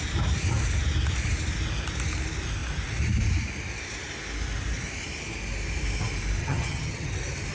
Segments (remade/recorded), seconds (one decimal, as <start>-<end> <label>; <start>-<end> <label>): 0.0-6.4 recorded; 6.4-7.1 remade; 7.1-7.5 recorded